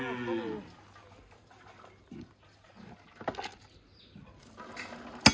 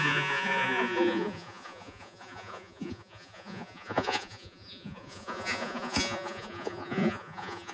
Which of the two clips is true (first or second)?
first